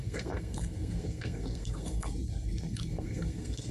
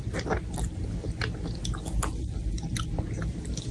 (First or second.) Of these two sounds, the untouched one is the second